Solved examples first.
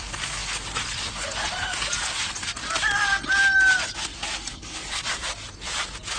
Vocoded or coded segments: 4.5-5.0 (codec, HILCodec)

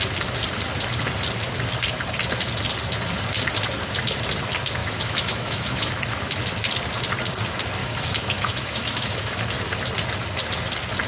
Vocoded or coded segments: 4.8-5.9 (autoencoder, DAC-VAE); 7.8-9.4

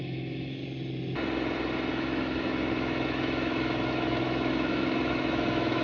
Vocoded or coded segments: 0.0-0.6 (autoencoder, DAC-VAE); 1.9-5.8